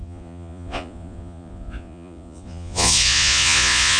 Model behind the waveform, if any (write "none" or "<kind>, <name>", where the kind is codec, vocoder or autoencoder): vocoder, Vocos